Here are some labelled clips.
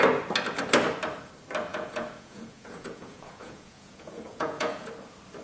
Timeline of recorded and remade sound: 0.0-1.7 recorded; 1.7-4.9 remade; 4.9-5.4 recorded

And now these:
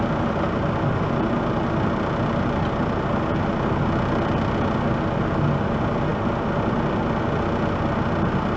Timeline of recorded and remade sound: 0.0-8.6 recorded

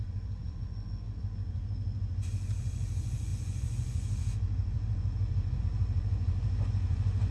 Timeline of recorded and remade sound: 0.0-7.3 remade

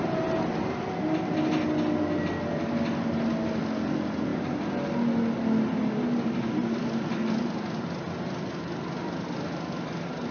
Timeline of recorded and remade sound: 0.0-10.3 recorded

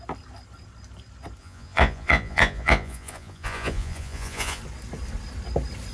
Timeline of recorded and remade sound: 0.0-1.4 recorded; 1.4-4.6 remade; 4.6-5.9 recorded

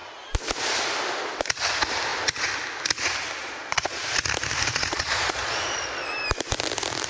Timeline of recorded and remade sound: 0.0-3.4 recorded; 3.4-4.0 remade; 4.0-4.7 recorded; 4.7-6.1 remade; 6.1-7.1 recorded

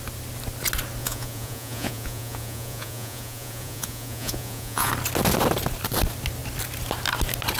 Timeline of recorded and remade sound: 0.0-1.0 recorded; 1.0-4.9 remade; 4.9-7.6 recorded

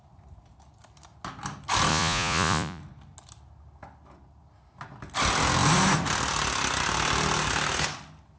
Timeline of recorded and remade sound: 0.0-1.9 recorded; 1.9-2.8 remade; 2.8-8.4 recorded